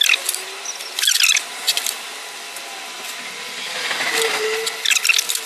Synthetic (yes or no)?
no